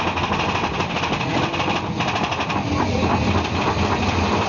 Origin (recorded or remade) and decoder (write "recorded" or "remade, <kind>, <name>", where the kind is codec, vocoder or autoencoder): recorded